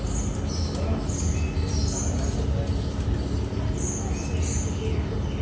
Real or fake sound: real